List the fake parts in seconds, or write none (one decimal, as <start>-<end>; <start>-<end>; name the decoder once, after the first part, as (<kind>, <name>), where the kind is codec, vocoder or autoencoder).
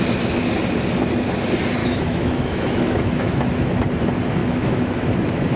1.8-3.7 (autoencoder, DAC-VAE); 4.4-5.1